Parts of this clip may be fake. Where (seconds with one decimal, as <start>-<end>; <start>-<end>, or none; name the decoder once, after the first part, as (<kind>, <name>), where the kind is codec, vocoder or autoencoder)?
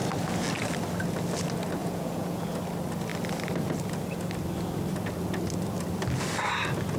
1.8-2.6 (vocoder, Vocos)